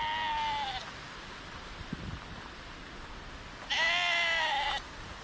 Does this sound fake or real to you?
real